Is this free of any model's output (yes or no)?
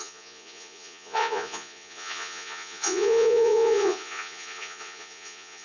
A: no